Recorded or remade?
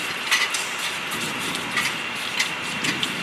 recorded